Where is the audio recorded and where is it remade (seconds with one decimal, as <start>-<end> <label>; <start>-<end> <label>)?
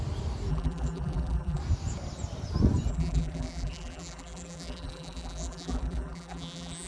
0.0-0.5 recorded; 0.5-1.6 remade; 1.6-2.9 recorded; 2.9-6.9 remade